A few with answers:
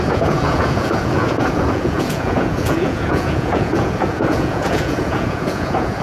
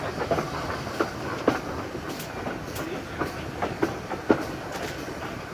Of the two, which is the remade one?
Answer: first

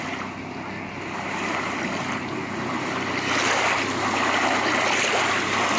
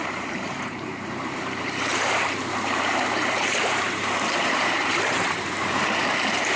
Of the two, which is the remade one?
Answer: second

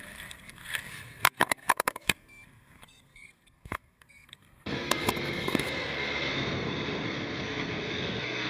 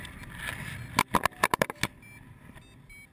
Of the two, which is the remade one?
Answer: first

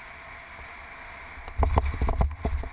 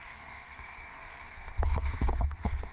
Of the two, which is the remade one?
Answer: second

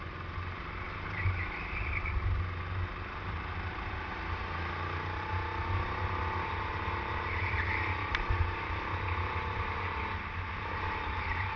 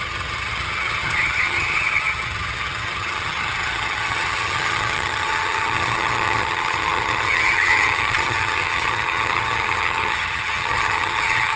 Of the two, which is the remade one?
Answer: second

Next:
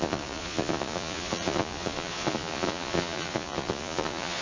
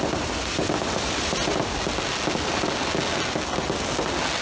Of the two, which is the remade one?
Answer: first